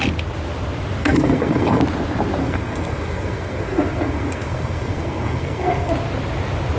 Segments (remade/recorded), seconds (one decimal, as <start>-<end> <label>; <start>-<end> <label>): 0.0-1.0 recorded; 1.0-1.8 remade; 1.8-2.4 recorded; 2.4-5.9 remade; 5.9-6.8 recorded